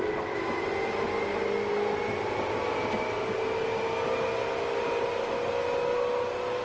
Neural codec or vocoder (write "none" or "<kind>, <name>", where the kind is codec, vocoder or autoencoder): none